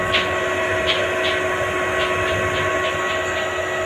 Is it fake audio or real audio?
real